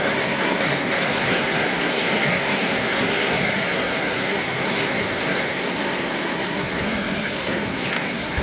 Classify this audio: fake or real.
fake